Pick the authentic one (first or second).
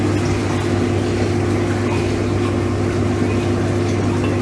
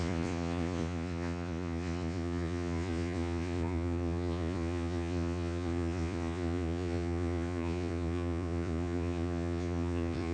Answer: first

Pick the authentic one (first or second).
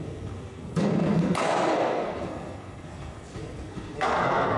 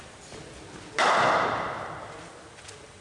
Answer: second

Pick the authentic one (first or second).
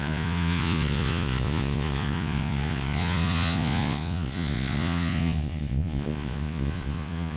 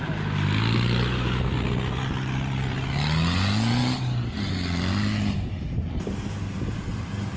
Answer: second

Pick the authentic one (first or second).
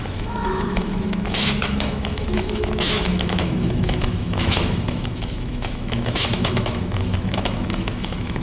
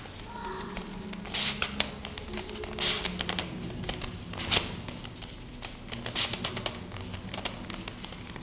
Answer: second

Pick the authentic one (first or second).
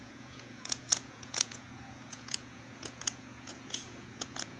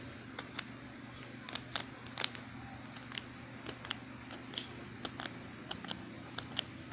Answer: second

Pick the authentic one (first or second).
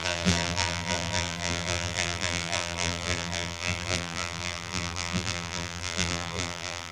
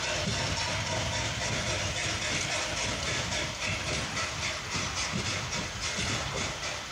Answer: second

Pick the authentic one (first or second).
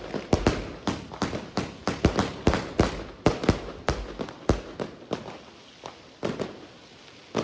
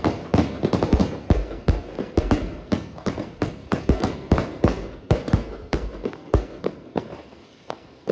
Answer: first